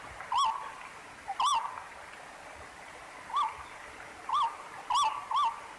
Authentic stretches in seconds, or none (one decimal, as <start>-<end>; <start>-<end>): 0.0-5.8